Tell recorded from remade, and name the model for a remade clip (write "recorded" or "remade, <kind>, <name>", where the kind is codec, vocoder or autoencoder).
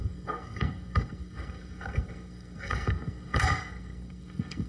remade, codec, SNAC